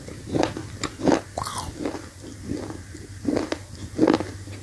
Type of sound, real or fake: real